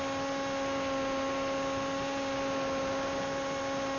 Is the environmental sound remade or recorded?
recorded